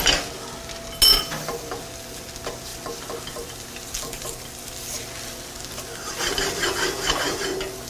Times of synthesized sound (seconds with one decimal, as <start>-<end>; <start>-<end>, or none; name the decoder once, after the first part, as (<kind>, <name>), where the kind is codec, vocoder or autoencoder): none